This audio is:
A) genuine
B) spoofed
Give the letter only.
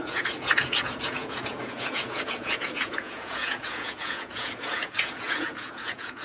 B